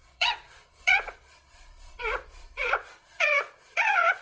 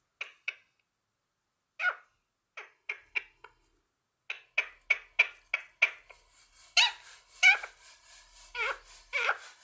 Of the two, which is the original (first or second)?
second